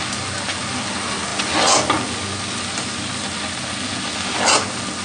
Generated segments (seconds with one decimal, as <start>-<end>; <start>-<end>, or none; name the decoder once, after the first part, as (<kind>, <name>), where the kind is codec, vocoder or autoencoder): none